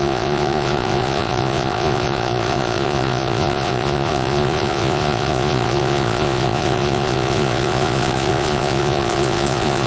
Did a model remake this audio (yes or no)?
yes